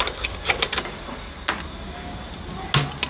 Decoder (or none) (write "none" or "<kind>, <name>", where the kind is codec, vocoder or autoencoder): none